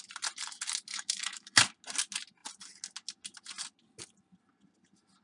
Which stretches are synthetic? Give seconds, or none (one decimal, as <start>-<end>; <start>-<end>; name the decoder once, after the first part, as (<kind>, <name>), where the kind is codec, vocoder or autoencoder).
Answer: 0.9-1.6 (autoencoder, DAC-VAE)